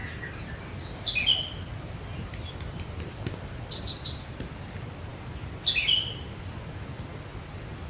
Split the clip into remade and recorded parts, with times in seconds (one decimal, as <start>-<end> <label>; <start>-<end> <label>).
0.0-7.9 recorded